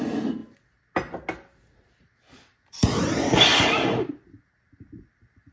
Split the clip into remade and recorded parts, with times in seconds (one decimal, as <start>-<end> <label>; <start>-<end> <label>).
0.0-3.5 recorded; 3.5-4.1 remade; 4.1-5.5 recorded